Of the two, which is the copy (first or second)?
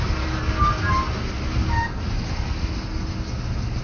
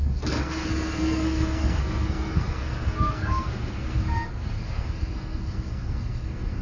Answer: second